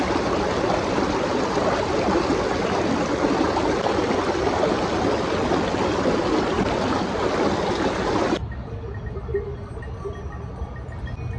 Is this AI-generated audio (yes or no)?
no